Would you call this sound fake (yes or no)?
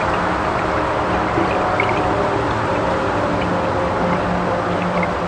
no